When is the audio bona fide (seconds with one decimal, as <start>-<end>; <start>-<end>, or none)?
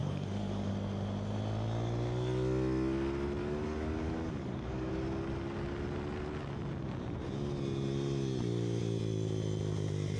0.7-3.4; 4.9-10.2